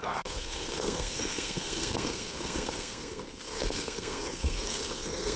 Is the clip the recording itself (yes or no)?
no